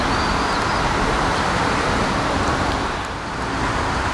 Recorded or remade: recorded